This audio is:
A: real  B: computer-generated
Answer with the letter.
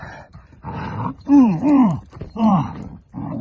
B